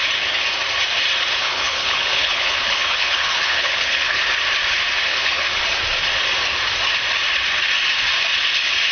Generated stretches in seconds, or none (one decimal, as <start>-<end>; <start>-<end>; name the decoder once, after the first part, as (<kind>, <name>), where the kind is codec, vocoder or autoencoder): 1.4-4.2 (codec, HILCodec); 5.1-5.6